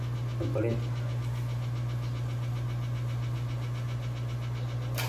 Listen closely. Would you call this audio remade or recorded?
recorded